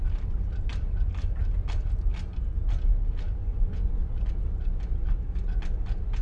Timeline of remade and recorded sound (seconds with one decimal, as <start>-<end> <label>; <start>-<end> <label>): 0.0-3.4 recorded; 3.4-3.9 remade; 3.9-6.2 recorded